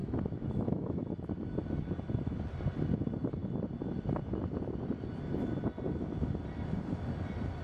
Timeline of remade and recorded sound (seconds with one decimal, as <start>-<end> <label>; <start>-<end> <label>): 0.0-1.0 remade; 1.0-7.6 recorded